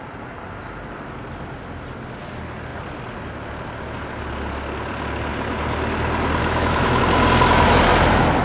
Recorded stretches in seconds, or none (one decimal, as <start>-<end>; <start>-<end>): 0.0-6.4; 7.0-8.4